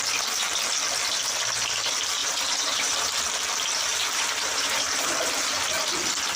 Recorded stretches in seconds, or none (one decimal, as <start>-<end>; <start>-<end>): 0.0-2.2; 3.2-3.9; 5.1-6.4